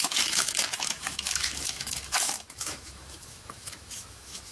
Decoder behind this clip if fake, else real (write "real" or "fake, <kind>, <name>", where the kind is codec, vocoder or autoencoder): fake, autoencoder, DAC-VAE